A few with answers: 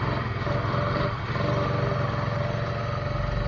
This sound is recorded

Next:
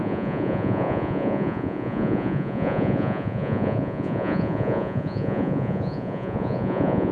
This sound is remade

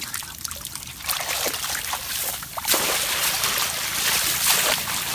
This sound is recorded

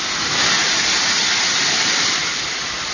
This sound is recorded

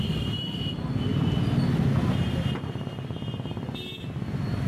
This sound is recorded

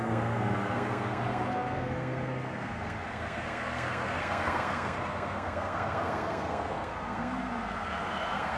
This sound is remade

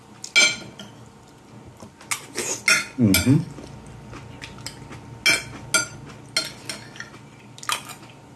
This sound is recorded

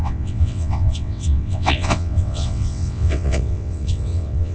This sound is remade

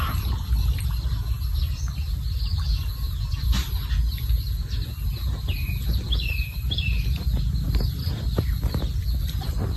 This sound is recorded